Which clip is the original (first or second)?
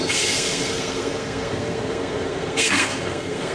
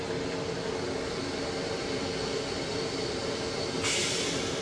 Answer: second